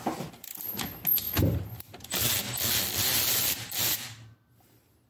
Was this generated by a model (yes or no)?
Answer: no